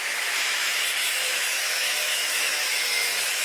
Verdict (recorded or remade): remade